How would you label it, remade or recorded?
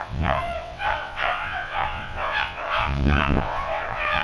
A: remade